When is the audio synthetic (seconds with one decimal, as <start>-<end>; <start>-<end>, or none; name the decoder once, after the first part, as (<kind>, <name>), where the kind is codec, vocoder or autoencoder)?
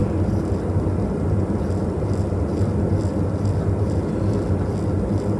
none